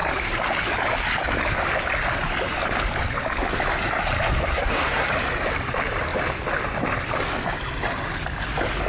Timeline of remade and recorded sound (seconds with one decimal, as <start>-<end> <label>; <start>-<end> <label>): 0.0-4.5 recorded; 4.5-5.1 remade; 5.1-8.9 recorded